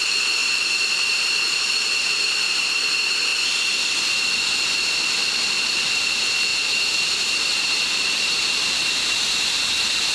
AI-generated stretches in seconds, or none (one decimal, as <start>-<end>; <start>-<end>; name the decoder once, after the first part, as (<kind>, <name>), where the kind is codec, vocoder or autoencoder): 0.0-3.3 (vocoder, BigVGAN v2); 5.7-10.1